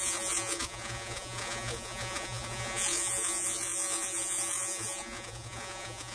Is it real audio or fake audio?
fake